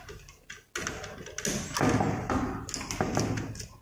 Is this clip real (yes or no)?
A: yes